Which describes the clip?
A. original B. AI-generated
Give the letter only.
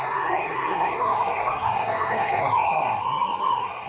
B